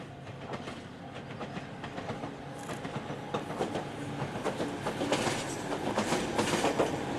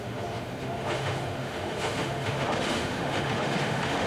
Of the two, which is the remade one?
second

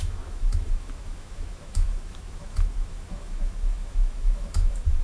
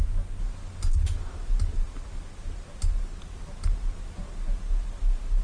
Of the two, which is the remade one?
first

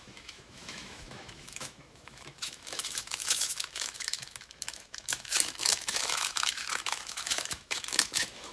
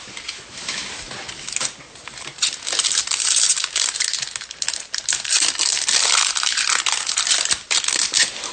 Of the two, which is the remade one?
first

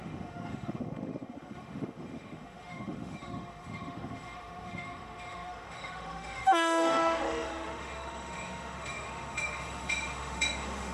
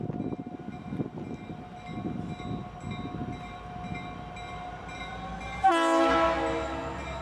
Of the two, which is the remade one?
first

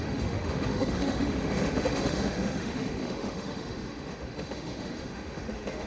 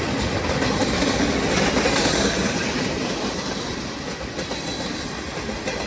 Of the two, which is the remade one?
first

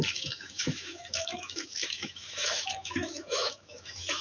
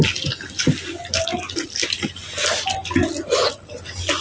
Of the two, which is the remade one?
first